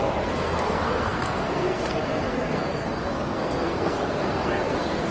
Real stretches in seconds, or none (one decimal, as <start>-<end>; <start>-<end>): none